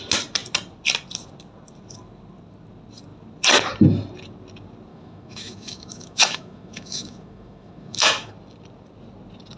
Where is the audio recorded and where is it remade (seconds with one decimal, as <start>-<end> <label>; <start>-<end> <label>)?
0.0-4.9 recorded; 4.9-8.3 remade; 8.3-9.6 recorded